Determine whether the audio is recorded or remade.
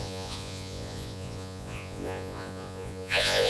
remade